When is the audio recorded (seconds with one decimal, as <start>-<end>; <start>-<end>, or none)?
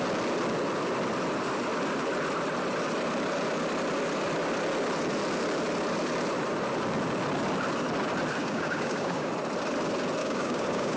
0.0-8.4; 9.3-10.2